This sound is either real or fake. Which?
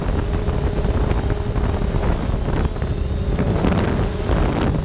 real